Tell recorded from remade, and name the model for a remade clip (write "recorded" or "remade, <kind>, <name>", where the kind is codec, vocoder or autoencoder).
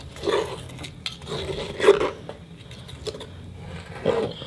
recorded